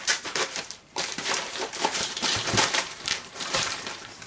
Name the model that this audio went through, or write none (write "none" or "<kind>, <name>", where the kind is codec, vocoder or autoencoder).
vocoder, BigVGAN v2